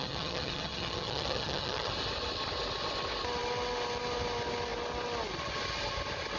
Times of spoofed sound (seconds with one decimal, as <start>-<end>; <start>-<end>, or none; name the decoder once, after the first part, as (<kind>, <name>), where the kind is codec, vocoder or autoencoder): 0.0-1.9 (vocoder, HiFi-GAN)